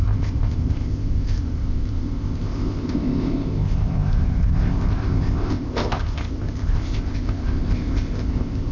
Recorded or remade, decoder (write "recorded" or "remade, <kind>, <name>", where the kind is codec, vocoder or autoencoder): remade, codec, ZipCodec